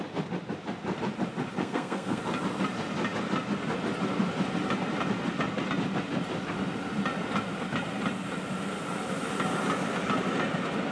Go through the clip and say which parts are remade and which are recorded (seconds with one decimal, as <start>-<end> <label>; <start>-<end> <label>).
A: 0.0-1.5 recorded; 1.5-2.2 remade; 2.2-10.9 recorded